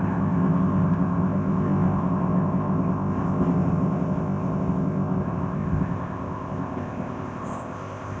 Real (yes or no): no